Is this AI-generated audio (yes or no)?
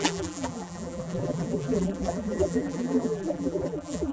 yes